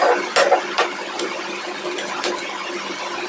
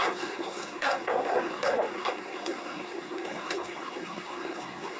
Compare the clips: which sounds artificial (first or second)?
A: second